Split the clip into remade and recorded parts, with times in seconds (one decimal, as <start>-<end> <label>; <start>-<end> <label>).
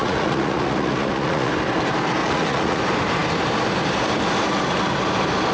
0.0-1.5 remade; 1.5-2.2 recorded; 2.2-2.8 remade; 2.8-5.5 recorded